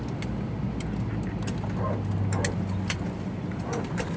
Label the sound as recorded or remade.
recorded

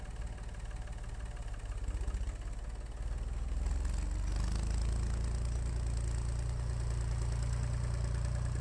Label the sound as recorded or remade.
recorded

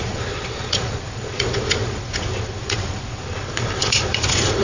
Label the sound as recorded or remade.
remade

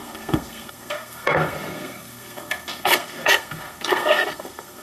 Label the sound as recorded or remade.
remade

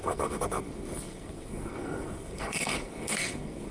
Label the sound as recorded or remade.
remade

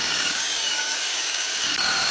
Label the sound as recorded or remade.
remade